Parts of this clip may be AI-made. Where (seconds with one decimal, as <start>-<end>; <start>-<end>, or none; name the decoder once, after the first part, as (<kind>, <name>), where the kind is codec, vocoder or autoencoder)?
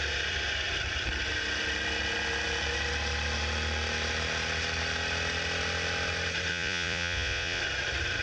6.5-7.6 (vocoder, Vocos)